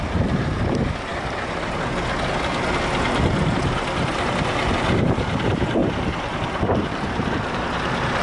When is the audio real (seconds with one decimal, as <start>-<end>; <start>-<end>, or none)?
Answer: 1.1-4.7